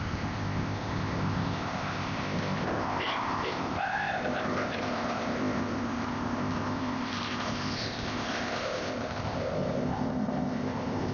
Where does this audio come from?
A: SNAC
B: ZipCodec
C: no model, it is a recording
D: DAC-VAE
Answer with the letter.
B